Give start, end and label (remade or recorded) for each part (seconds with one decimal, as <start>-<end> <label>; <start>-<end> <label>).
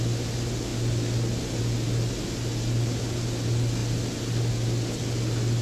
0.0-5.6 recorded